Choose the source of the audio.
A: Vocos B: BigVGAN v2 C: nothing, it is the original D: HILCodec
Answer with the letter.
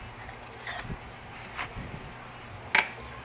C